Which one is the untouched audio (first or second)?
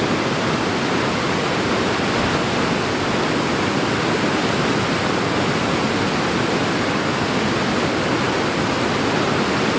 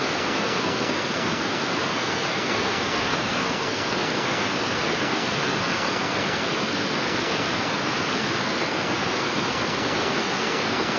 first